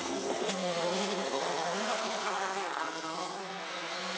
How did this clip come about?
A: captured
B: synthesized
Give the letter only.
B